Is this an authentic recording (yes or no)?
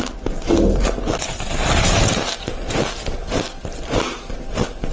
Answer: yes